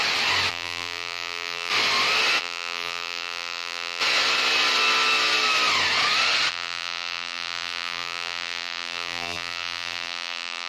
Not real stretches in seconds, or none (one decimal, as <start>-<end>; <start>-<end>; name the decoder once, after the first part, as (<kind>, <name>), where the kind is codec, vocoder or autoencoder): 0.5-1.7 (vocoder, BigVGAN v2); 2.4-4.0; 6.5-10.7